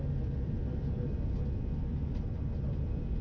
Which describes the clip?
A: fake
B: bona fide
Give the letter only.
B